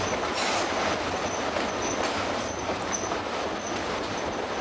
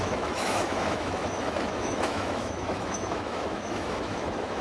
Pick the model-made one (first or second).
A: second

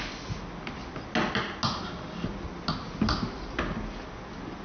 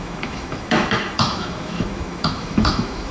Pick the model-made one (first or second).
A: second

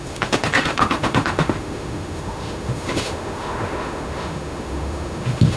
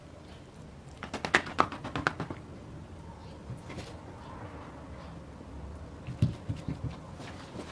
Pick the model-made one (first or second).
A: first